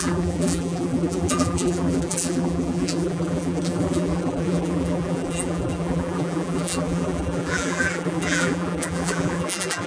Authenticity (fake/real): fake